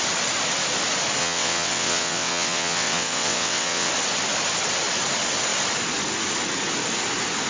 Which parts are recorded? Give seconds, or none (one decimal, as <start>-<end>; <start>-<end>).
0.0-1.2; 3.9-7.5